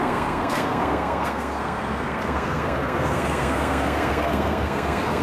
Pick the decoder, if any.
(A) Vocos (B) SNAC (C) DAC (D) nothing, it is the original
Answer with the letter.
B